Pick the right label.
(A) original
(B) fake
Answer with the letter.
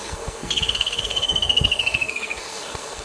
B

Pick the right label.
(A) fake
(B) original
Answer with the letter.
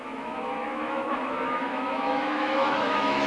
A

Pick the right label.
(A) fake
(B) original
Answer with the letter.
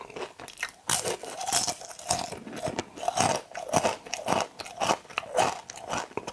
B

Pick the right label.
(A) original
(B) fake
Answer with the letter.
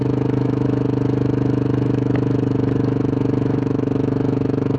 B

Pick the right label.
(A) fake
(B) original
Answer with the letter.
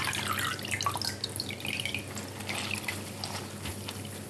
B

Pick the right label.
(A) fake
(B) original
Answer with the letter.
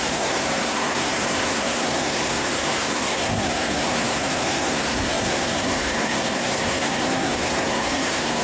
A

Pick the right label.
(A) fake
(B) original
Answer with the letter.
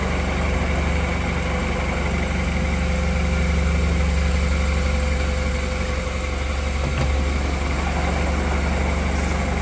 B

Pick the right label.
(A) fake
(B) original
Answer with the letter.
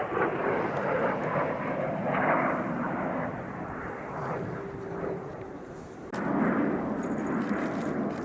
B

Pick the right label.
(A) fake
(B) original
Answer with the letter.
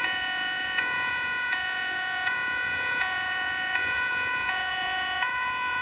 A